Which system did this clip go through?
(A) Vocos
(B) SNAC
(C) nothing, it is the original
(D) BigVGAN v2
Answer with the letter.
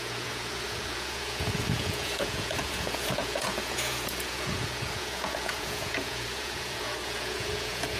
A